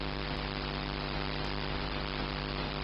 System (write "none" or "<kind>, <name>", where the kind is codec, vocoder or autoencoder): vocoder, BigVGAN v2